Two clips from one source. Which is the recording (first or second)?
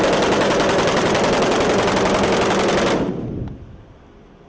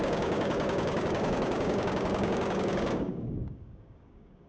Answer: first